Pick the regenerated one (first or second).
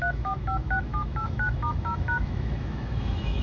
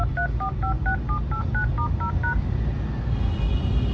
first